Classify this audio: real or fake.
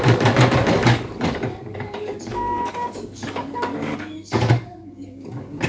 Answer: fake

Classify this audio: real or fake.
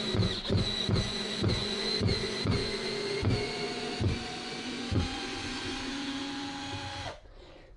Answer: fake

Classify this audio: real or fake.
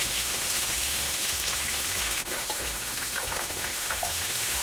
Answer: fake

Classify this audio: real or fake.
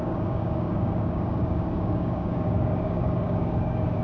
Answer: fake